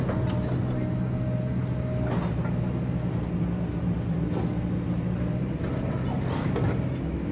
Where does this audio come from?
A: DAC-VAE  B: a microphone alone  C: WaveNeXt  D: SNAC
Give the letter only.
B